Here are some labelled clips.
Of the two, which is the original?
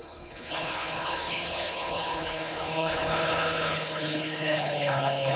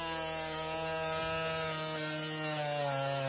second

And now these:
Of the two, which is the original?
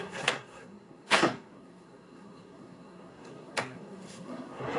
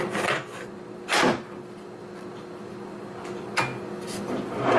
second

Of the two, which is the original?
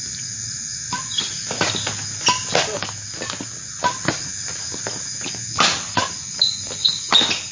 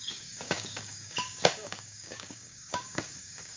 first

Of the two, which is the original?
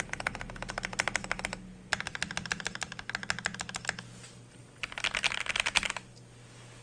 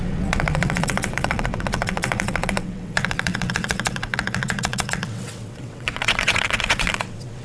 first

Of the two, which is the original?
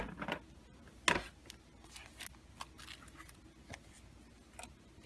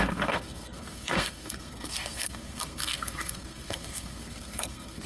first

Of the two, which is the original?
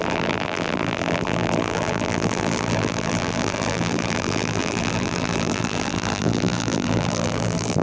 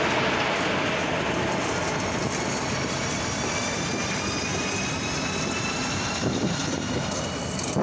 second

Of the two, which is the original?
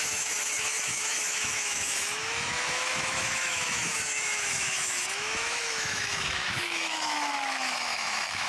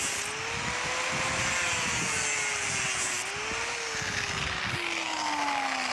second